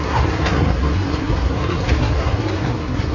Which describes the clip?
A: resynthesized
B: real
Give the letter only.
A